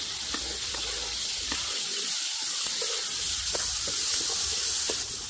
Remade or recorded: recorded